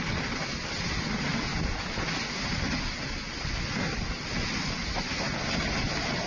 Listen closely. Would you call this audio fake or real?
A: real